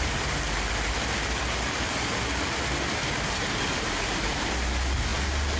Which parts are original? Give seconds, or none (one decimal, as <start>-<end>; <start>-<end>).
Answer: 0.0-5.6